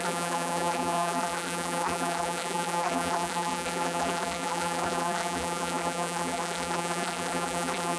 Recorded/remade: remade